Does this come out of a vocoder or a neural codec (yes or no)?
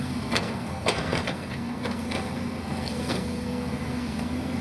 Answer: yes